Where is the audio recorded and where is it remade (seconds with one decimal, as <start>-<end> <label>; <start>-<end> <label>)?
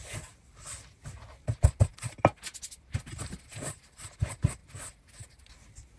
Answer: 0.0-6.0 recorded